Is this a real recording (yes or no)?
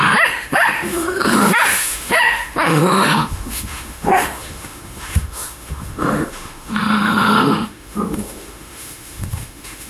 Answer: no